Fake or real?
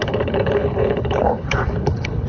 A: fake